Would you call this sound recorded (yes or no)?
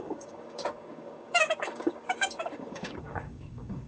no